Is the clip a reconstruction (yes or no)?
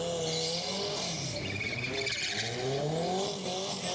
no